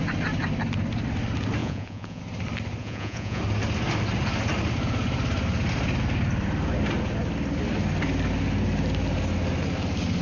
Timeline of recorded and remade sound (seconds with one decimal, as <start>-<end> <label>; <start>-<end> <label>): 0.0-1.6 recorded; 1.6-2.2 remade; 2.2-2.8 recorded; 2.8-3.4 remade; 3.4-10.2 recorded